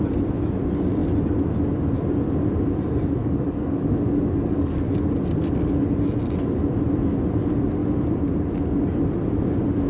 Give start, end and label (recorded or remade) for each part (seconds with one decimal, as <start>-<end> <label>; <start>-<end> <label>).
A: 0.0-3.2 recorded; 3.2-4.9 remade; 4.9-9.9 recorded